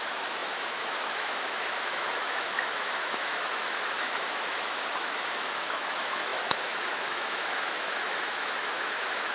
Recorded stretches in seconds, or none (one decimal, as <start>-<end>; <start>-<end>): none